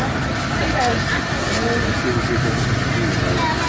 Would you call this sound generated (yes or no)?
no